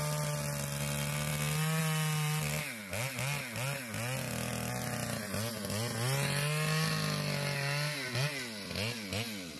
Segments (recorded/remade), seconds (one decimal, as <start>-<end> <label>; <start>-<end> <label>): 0.0-9.6 recorded